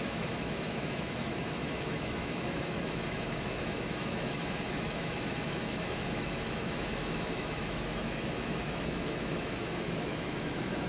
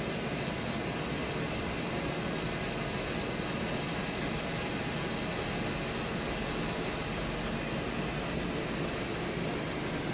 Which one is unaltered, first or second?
second